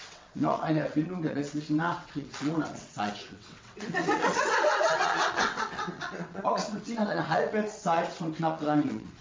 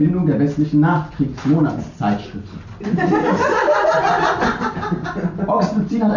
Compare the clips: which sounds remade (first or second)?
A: first